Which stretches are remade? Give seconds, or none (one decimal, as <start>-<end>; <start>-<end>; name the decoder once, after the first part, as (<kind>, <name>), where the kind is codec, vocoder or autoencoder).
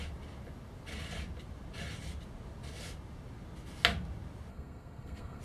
4.5-5.4 (codec, SNAC)